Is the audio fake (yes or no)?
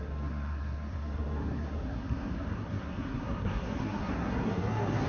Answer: yes